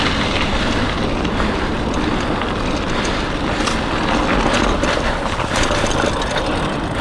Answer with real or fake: real